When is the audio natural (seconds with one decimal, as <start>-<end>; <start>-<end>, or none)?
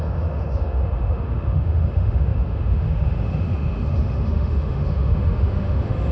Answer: none